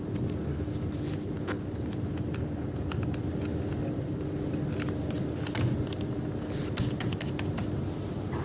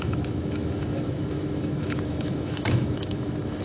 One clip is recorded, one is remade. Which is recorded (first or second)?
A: first